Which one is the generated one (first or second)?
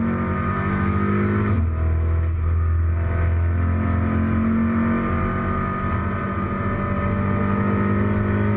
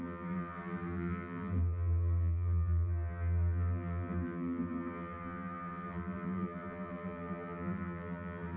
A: second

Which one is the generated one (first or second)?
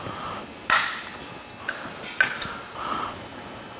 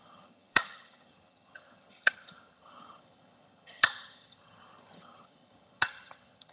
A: second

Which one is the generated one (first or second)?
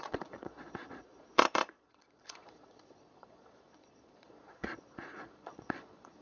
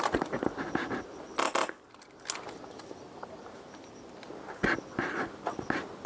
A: first